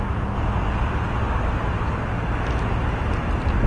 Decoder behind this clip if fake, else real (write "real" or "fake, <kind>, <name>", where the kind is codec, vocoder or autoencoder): real